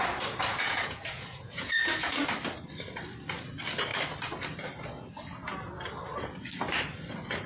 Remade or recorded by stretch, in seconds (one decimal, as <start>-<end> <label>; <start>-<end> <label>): 0.0-0.5 recorded; 0.5-2.2 remade; 2.2-7.5 recorded